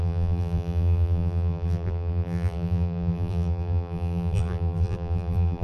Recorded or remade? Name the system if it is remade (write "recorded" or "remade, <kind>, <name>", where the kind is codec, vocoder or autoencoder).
remade, vocoder, BigVGAN v2